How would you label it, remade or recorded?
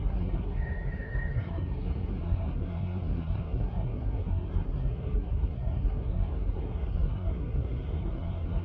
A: remade